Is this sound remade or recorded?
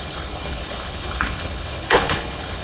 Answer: remade